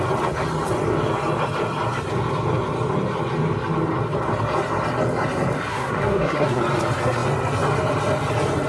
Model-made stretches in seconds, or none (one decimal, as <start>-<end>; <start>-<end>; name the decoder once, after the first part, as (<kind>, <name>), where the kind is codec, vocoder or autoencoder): 5.7-6.6 (codec, SNAC)